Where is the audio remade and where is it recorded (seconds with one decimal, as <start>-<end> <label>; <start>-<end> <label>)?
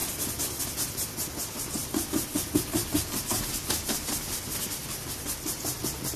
0.0-1.8 recorded; 1.8-4.1 remade; 4.1-4.8 recorded; 4.8-5.8 remade; 5.8-6.2 recorded